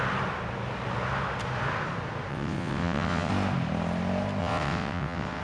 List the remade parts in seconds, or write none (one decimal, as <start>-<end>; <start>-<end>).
2.3-3.3; 4.4-5.4